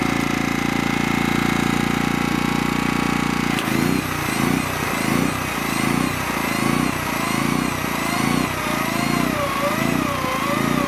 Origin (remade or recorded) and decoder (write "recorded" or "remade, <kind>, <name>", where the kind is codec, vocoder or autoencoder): recorded